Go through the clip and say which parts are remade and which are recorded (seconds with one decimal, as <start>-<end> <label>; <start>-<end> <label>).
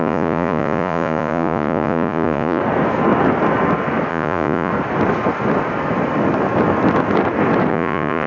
0.0-2.6 remade; 2.6-4.1 recorded; 4.1-4.7 remade; 4.7-7.7 recorded; 7.7-8.3 remade